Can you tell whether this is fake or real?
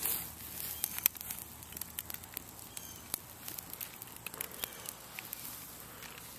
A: real